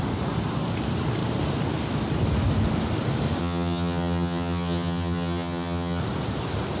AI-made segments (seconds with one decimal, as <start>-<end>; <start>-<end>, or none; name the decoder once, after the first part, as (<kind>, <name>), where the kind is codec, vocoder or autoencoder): 3.4-6.0 (vocoder, HiFi-GAN)